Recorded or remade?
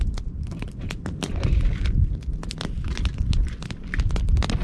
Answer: recorded